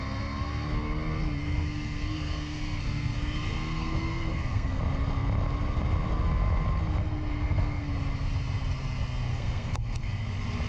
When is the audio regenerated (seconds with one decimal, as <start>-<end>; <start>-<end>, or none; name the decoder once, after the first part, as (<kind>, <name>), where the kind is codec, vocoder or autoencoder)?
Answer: 1.4-4.8 (codec, SNAC); 7.0-7.9; 9.3-10.2

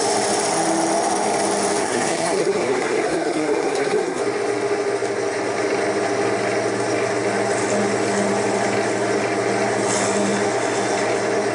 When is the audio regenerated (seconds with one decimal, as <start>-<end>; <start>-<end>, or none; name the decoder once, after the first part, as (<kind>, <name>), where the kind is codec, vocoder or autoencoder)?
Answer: 1.8-4.2 (codec, SNAC)

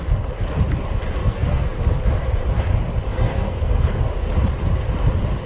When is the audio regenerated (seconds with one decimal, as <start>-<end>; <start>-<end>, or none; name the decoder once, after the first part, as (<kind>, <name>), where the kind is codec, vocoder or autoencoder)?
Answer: 1.2-1.8 (codec, SNAC); 3.1-4.0

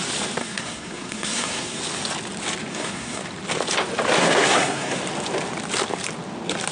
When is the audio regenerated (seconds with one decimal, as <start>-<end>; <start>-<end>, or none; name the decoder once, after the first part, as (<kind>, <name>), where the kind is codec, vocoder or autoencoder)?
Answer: 0.4-1.8 (codec, SNAC); 2.7-3.2; 4.2-5.0

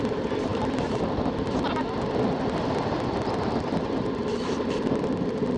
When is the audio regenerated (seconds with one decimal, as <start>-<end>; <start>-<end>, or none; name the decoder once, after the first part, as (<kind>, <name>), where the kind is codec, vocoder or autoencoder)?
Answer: none

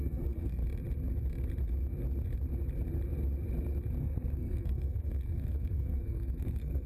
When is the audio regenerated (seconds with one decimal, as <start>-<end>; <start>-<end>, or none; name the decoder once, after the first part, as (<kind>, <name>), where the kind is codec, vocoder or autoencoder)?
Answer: 0.0-0.6 (codec, SNAC); 4.0-6.9

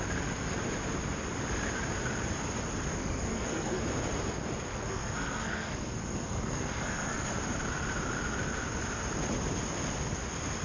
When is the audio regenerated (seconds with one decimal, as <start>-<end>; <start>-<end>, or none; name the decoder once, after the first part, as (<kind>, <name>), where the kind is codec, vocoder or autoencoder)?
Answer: 3.0-3.8 (codec, SNAC); 4.7-7.4

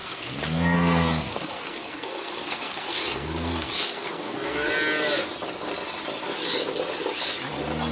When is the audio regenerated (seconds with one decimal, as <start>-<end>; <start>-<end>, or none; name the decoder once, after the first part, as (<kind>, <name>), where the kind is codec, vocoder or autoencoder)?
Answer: 0.0-4.7 (codec, SNAC)